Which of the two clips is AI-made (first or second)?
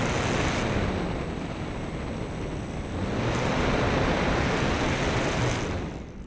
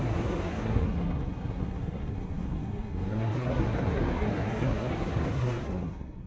second